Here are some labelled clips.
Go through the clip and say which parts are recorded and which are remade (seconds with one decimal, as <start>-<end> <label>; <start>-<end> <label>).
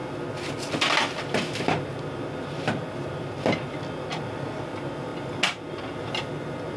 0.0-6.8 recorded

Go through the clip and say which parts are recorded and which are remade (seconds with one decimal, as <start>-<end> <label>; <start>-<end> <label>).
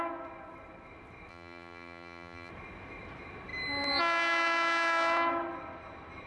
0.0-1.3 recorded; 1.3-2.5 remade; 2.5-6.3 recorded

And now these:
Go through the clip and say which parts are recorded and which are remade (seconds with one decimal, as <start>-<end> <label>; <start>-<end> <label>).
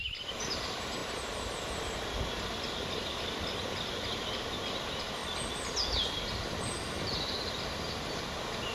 0.0-8.7 recorded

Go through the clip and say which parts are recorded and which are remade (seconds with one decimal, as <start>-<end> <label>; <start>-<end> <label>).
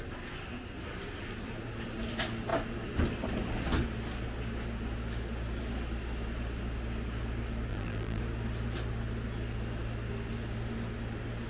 0.0-7.7 recorded; 7.7-8.2 remade; 8.2-11.5 recorded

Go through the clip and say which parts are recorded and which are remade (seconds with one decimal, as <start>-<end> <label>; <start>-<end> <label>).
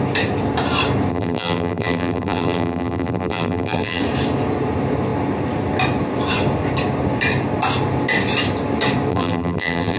0.0-1.1 recorded; 1.1-4.0 remade; 4.0-9.1 recorded; 9.1-10.0 remade